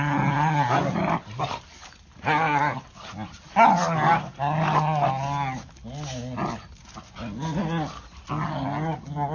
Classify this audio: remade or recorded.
recorded